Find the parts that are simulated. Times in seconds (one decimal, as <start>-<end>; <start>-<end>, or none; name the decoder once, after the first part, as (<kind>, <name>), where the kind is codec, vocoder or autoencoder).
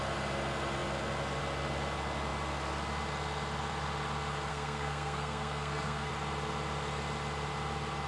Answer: 4.5-6.1 (codec, SNAC)